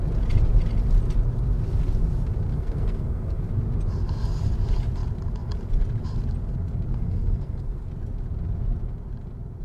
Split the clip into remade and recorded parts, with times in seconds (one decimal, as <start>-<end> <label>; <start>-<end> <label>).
0.0-2.5 recorded; 2.5-3.5 remade; 3.5-6.9 recorded; 6.9-7.9 remade; 7.9-9.6 recorded